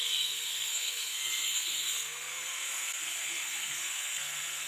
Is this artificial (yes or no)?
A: yes